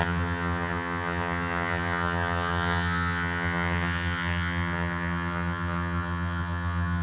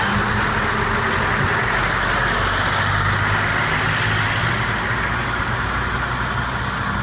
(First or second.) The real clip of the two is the second